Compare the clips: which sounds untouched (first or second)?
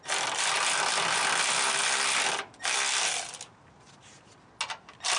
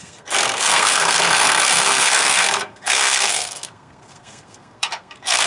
first